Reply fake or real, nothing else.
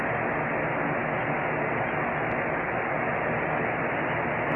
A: real